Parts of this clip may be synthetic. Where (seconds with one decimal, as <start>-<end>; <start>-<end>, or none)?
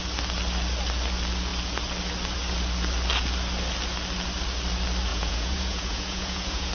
5.1-6.7